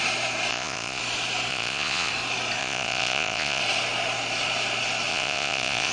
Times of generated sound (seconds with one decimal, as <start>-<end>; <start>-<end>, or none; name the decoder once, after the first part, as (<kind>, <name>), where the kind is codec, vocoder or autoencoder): 0.5-1.0 (vocoder, Vocos); 1.5-2.1; 2.6-3.6; 5.1-5.9